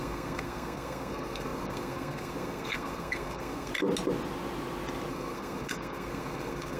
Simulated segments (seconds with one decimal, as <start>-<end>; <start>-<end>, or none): 0.0-3.7; 5.1-6.8